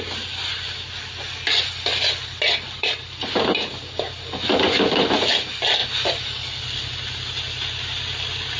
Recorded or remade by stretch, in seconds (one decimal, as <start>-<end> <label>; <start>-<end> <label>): 0.0-8.6 recorded